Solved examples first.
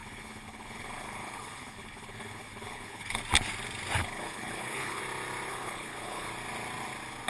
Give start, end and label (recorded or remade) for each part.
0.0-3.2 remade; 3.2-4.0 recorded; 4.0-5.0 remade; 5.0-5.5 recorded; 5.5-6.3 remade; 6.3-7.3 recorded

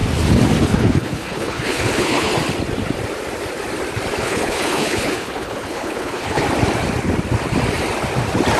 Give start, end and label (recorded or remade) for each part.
0.0-0.6 recorded; 0.6-2.3 remade; 2.3-4.2 recorded; 4.2-6.4 remade; 6.4-8.6 recorded

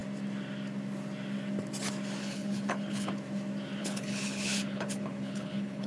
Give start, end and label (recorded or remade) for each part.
0.0-2.2 recorded; 2.2-3.1 remade; 3.1-3.8 recorded; 3.8-5.9 remade

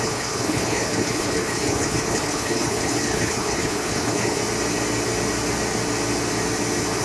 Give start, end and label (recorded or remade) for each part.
0.0-4.4 remade; 4.4-7.0 recorded